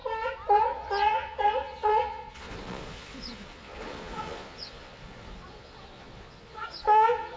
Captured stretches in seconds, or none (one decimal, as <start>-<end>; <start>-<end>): 0.0-0.6